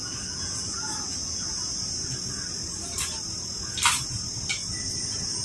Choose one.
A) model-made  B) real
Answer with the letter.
B